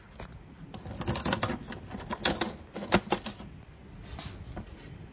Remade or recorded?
recorded